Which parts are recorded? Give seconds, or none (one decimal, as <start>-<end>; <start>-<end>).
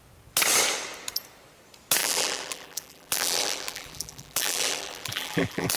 0.0-2.0